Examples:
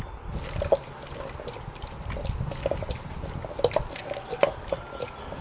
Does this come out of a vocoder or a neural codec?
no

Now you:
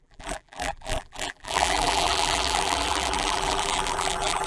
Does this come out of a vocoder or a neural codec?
yes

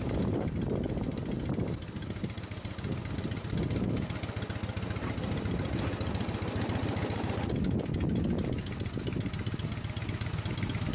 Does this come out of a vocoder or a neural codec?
no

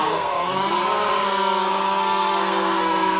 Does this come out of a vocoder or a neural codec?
yes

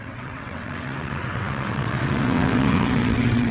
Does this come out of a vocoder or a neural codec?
yes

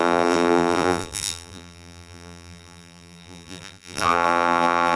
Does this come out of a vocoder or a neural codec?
yes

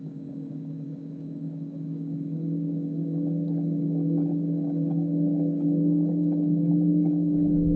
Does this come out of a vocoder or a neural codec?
yes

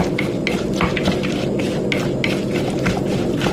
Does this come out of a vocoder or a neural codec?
no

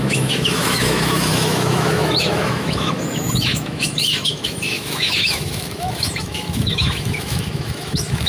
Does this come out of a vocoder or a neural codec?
yes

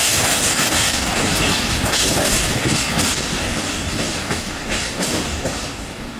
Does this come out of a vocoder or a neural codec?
yes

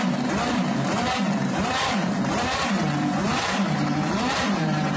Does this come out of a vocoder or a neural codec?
yes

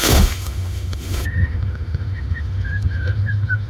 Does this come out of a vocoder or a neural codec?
yes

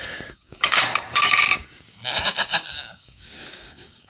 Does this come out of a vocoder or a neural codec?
yes